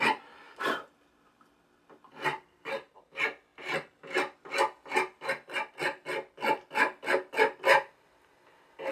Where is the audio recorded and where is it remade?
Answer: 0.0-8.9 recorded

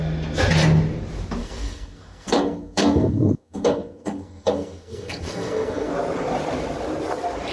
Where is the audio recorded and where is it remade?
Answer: 0.0-1.4 recorded; 1.4-5.9 remade; 5.9-7.5 recorded